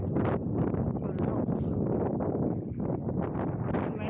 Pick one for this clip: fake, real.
real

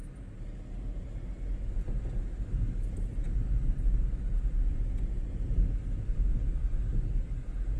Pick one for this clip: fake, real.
real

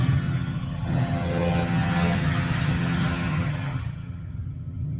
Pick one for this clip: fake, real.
fake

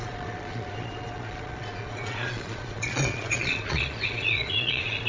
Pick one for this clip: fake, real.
fake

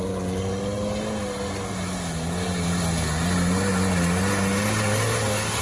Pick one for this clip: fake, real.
real